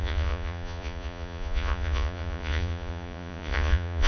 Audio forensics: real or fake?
fake